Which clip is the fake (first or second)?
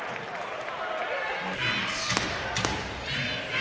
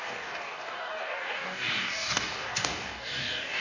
second